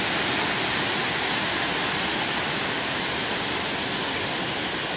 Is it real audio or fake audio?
real